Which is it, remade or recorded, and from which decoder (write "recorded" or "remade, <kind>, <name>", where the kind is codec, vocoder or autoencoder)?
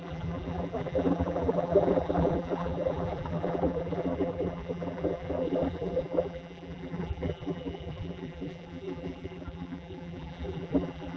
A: remade, vocoder, BigVGAN v2